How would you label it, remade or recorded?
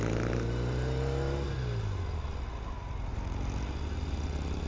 recorded